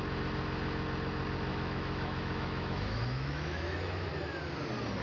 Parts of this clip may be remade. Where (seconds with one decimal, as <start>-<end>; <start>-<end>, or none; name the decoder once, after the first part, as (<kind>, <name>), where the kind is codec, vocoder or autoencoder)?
1.5-4.1 (autoencoder, DAC-VAE)